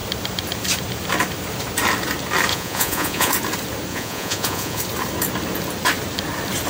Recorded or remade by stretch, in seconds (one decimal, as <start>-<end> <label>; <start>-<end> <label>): 0.0-2.5 recorded; 2.5-3.3 remade; 3.3-3.9 recorded; 3.9-4.8 remade; 4.8-6.7 recorded